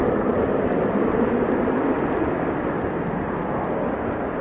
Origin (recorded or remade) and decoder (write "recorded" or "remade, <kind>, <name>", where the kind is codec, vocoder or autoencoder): recorded